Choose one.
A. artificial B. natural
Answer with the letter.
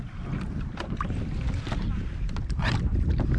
B